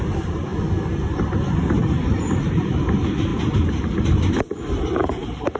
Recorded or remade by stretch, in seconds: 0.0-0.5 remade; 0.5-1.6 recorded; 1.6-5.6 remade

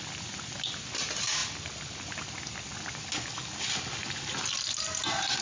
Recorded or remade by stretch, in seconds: 0.0-5.4 recorded

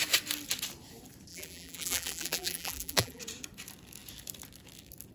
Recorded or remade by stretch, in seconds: 0.0-1.3 recorded; 1.3-3.2 remade; 3.2-5.1 recorded

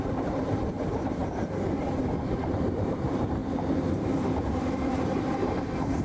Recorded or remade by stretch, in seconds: 0.0-1.2 remade; 1.2-2.0 recorded; 2.0-6.0 remade

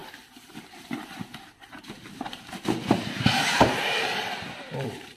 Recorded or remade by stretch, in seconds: 0.0-5.2 remade